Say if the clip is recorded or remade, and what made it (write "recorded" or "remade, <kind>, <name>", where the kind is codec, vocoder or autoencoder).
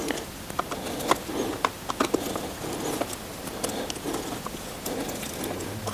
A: recorded